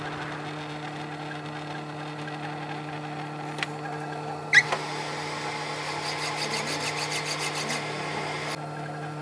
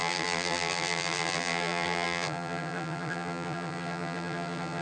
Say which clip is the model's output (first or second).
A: second